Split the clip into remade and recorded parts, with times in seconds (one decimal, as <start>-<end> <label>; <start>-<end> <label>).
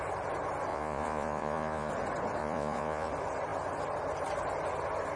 0.0-0.7 recorded; 0.7-1.9 remade; 1.9-2.4 recorded; 2.4-3.1 remade; 3.1-5.2 recorded